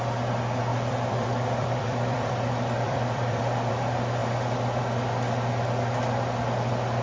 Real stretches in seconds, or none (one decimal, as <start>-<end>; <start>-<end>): 0.0-0.7; 3.7-7.0